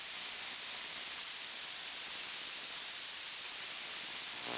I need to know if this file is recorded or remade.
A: recorded